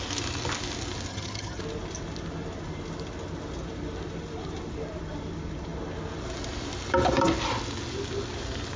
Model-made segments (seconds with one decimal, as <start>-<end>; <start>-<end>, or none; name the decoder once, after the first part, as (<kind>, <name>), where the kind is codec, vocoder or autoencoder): 1.1-1.6 (vocoder, HiFi-GAN)